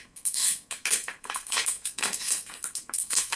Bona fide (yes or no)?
no